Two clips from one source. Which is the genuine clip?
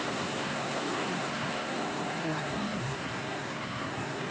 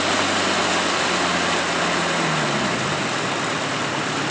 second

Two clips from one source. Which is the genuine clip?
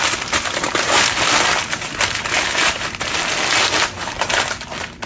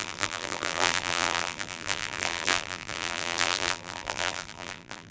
first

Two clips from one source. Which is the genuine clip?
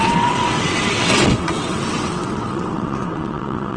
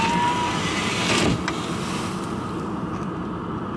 second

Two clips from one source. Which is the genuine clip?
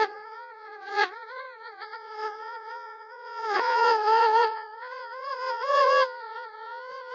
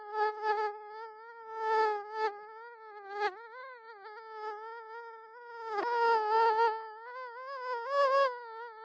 second